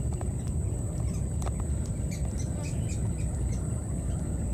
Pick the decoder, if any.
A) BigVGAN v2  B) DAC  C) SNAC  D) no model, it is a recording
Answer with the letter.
D